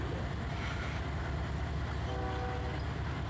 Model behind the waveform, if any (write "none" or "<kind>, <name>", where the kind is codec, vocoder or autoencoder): none